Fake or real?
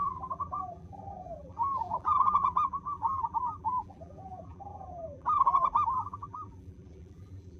fake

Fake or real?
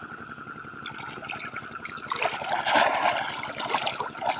real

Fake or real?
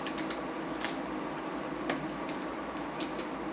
real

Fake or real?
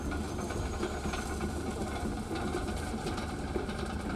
fake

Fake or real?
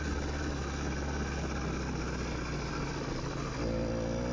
real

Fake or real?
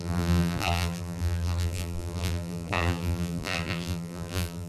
fake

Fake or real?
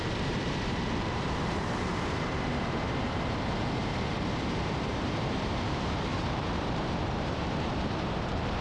fake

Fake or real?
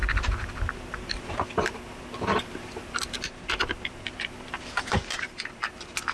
fake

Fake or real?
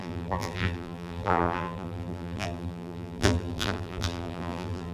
fake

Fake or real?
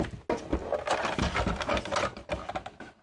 real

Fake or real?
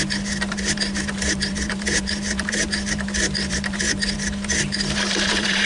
fake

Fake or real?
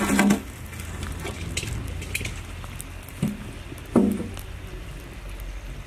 real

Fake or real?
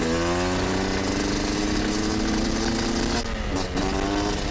real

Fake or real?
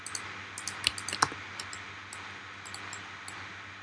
real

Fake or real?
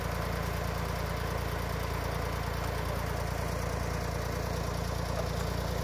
real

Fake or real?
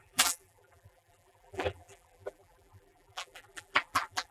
fake